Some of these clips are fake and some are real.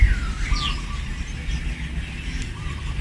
real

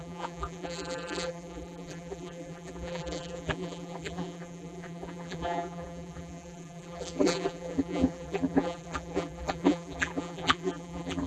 fake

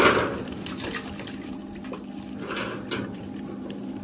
real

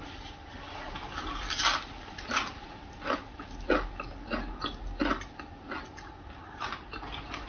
real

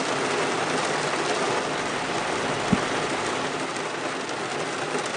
real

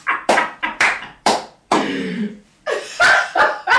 fake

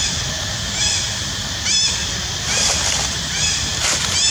real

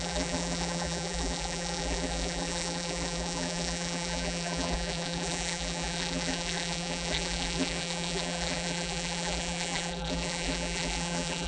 fake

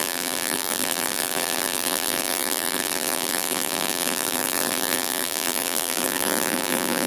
fake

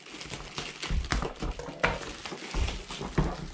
real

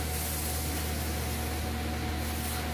real